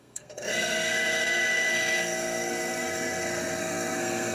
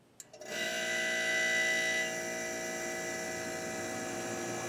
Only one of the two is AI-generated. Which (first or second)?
first